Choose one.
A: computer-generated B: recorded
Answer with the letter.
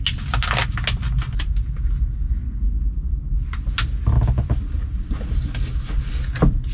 B